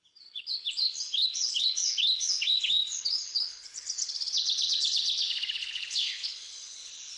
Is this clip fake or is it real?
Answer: fake